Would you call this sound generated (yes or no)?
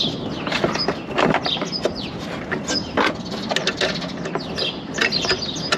no